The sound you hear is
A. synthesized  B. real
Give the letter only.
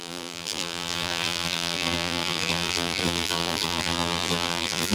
A